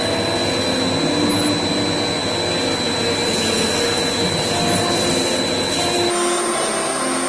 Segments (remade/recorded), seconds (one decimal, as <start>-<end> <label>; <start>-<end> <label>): 0.0-7.3 recorded

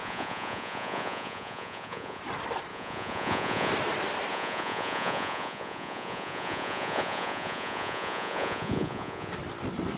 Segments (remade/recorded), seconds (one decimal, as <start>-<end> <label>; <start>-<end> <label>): 0.0-2.2 remade; 2.2-2.7 recorded; 2.7-3.7 remade; 3.7-4.3 recorded; 4.3-9.3 remade; 9.3-10.0 recorded